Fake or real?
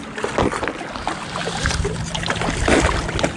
real